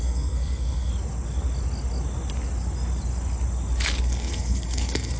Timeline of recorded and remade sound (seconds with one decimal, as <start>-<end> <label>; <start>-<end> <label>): 0.0-0.9 remade; 0.9-4.0 recorded; 4.0-5.2 remade